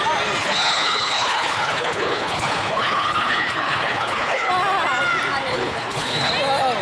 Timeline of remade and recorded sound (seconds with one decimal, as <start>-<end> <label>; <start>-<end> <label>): 0.0-0.4 recorded; 0.4-4.5 remade; 4.5-5.5 recorded; 5.5-6.3 remade; 6.3-6.8 recorded